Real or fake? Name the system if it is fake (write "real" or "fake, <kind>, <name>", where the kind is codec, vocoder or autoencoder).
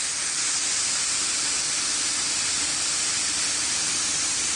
real